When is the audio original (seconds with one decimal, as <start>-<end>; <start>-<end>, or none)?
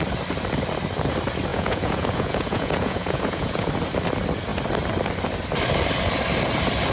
0.0-1.5; 3.7-6.9